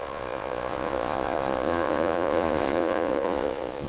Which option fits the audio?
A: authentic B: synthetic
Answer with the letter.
B